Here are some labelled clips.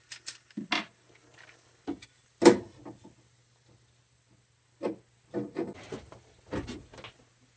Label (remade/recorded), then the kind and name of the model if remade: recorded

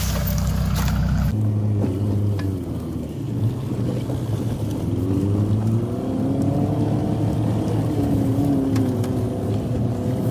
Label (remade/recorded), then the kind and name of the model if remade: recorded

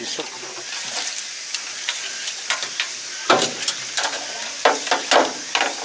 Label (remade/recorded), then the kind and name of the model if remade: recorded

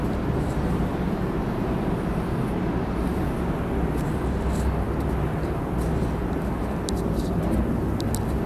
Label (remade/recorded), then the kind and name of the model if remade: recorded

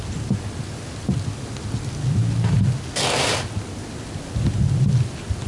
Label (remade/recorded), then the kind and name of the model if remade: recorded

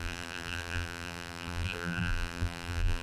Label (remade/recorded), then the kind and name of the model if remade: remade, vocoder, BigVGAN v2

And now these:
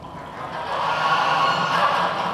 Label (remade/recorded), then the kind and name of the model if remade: remade, vocoder, BigVGAN v2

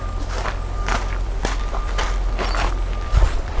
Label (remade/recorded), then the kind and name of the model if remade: remade, vocoder, BigVGAN v2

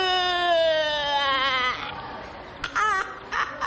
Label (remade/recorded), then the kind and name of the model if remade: recorded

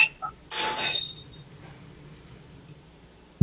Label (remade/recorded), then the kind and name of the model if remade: recorded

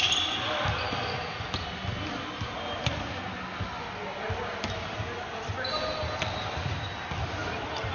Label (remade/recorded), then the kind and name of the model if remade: recorded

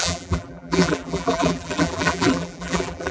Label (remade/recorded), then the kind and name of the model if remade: remade, vocoder, BigVGAN v2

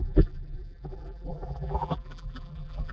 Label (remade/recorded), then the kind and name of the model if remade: remade, vocoder, BigVGAN v2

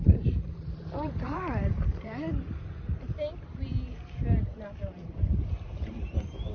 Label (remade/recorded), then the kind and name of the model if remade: remade, vocoder, BigVGAN v2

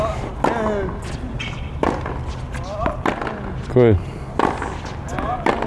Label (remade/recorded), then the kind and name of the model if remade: recorded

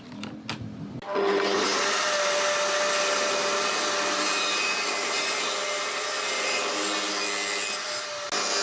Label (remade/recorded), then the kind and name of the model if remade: recorded